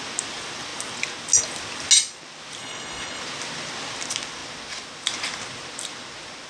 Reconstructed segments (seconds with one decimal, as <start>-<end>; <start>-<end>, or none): 2.6-3.2

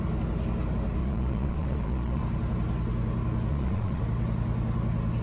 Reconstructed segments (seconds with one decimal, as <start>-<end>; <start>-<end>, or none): 1.0-2.2; 3.5-4.0

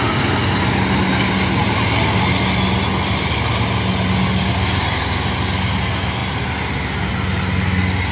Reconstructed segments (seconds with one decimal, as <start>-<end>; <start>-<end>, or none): none

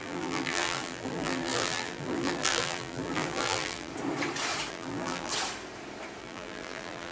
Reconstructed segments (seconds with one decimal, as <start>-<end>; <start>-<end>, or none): 0.0-3.9; 4.7-5.3; 6.2-7.1

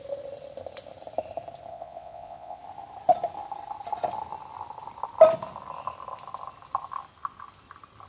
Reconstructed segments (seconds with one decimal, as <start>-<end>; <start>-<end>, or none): 1.7-2.6

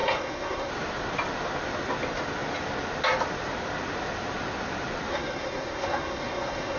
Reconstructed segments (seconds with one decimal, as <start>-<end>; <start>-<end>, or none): 0.0-0.7; 5.1-6.8

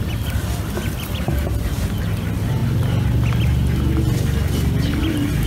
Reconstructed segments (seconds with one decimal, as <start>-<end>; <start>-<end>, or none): none